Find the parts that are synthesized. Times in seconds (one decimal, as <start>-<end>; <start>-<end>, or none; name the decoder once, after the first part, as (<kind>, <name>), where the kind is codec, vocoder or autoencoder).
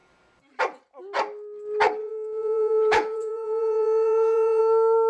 2.0-4.6 (vocoder, Vocos)